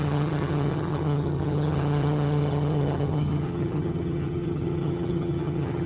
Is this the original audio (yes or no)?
no